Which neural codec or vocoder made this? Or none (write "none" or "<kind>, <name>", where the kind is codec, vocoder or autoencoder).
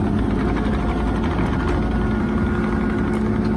none